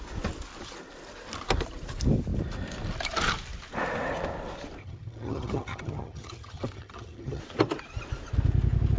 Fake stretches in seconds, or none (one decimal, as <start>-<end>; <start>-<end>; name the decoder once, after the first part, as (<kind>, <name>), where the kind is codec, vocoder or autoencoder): 4.8-7.4 (vocoder, HiFi-GAN)